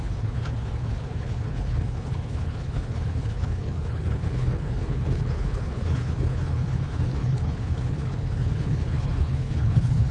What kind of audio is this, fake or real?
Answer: fake